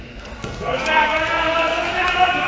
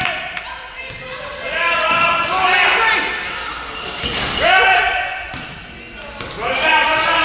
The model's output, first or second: first